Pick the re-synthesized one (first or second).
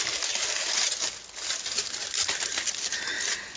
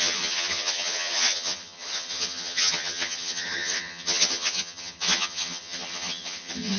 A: second